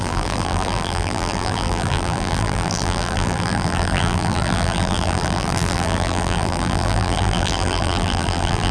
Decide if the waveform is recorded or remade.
remade